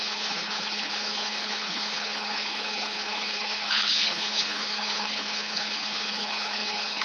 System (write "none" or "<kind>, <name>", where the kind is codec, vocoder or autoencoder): codec, HILCodec